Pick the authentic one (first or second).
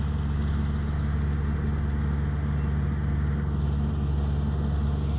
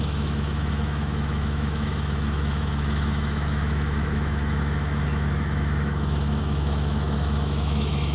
first